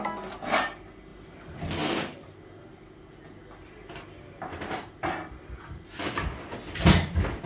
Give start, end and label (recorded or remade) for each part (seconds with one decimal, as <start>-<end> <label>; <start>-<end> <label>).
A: 0.0-7.5 recorded